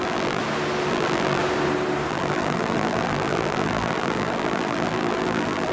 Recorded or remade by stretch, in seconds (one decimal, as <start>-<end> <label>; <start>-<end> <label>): 0.0-0.4 remade; 0.4-0.9 recorded; 0.9-1.4 remade; 1.4-2.1 recorded; 2.1-5.7 remade